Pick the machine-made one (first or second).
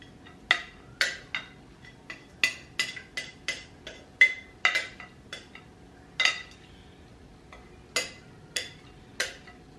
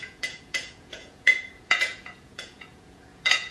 second